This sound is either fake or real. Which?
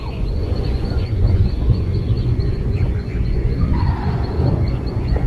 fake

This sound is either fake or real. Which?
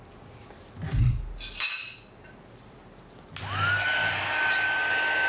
real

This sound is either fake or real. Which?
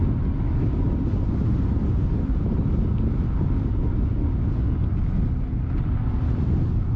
real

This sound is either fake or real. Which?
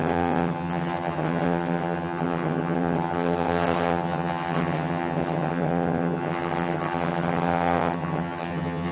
fake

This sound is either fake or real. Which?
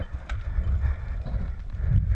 real